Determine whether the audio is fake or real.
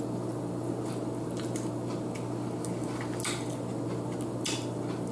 real